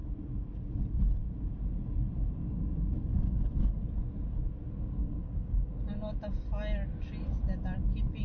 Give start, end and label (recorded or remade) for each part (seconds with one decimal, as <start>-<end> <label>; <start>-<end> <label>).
0.0-3.1 recorded; 3.1-3.8 remade; 3.8-5.0 recorded; 5.0-5.8 remade; 5.8-8.2 recorded